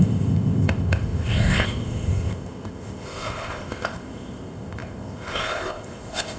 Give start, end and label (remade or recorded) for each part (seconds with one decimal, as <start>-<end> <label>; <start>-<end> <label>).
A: 0.0-6.4 remade